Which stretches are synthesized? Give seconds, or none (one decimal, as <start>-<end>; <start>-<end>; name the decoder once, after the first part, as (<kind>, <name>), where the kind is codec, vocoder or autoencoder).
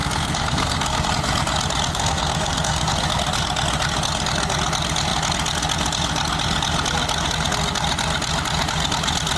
0.0-1.1 (codec, SNAC); 1.9-2.9